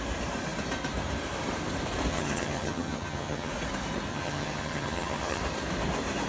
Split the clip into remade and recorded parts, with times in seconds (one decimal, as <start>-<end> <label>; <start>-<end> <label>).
0.0-2.1 recorded; 2.1-3.5 remade; 3.5-4.1 recorded; 4.1-5.4 remade; 5.4-6.3 recorded